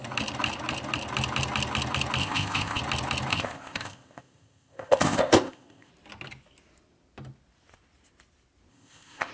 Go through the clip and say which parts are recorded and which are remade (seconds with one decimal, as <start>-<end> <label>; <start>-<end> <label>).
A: 0.0-2.2 recorded; 2.2-2.8 remade; 2.8-3.3 recorded; 3.3-5.9 remade; 5.9-8.7 recorded; 8.7-9.3 remade